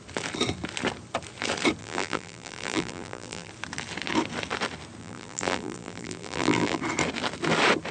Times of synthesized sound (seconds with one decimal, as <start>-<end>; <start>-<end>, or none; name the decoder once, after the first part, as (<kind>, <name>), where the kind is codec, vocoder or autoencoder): 1.8-3.5 (vocoder, BigVGAN v2); 5.0-6.8